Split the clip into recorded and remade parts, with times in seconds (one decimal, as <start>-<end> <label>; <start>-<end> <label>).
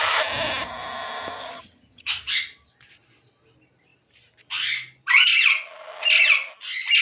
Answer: 0.0-1.4 recorded; 1.4-2.1 remade; 2.1-7.0 recorded